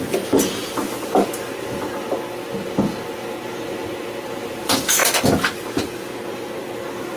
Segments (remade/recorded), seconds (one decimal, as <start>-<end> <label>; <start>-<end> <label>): 0.0-7.2 recorded